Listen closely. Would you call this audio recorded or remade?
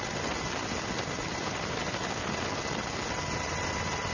recorded